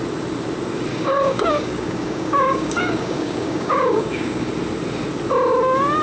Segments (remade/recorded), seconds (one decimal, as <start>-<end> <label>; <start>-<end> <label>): 0.0-0.9 recorded; 0.9-4.5 remade; 4.5-6.0 recorded